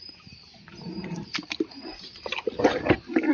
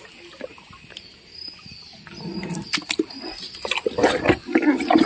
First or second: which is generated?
first